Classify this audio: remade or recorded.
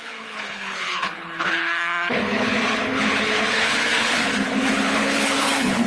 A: remade